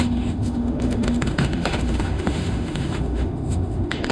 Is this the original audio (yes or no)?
no